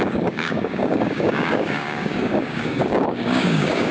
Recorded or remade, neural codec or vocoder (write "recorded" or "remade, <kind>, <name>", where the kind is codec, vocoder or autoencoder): remade, codec, DAC